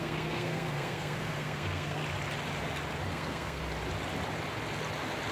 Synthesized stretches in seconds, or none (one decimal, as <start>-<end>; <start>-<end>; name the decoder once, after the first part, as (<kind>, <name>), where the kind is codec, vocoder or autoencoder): 0.0-2.0 (codec, SNAC); 3.1-3.6